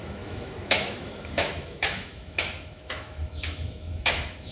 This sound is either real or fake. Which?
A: fake